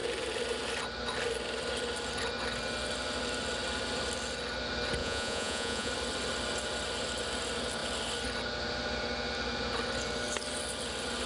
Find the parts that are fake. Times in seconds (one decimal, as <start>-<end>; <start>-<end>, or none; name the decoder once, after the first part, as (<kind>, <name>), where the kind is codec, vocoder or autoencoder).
5.0-5.9 (vocoder, Vocos)